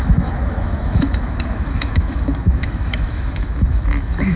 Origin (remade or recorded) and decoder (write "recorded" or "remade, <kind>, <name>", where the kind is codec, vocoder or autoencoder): remade, autoencoder, DAC-VAE